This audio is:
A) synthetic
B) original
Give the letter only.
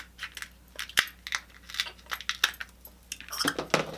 B